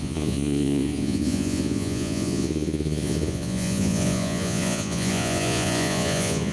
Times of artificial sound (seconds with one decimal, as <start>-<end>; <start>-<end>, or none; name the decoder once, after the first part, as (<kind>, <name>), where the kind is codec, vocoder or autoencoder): 0.0-6.5 (vocoder, Vocos)